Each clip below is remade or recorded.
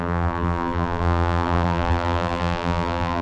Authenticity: remade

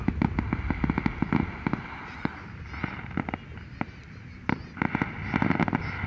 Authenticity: recorded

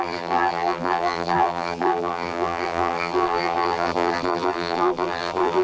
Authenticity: remade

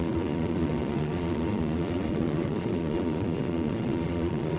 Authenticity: remade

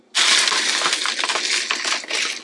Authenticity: recorded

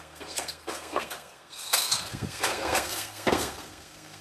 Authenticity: remade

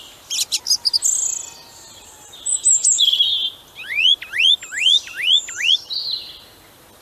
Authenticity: recorded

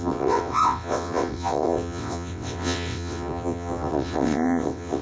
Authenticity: remade